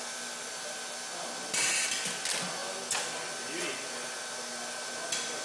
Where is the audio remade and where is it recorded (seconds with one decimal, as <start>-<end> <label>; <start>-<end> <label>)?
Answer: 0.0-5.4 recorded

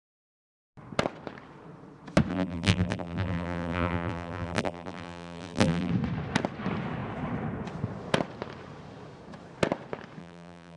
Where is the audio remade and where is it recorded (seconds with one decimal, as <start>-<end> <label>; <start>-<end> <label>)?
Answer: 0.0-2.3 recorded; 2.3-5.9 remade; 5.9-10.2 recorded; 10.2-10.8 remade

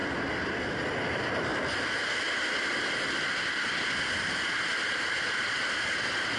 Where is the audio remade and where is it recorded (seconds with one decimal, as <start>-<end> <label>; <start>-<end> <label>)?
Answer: 0.0-6.4 recorded